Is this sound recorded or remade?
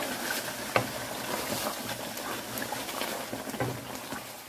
recorded